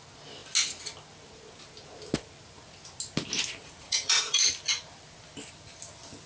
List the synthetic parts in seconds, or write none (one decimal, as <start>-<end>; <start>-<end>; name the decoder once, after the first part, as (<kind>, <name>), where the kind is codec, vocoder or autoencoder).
3.6-4.5 (vocoder, Vocos)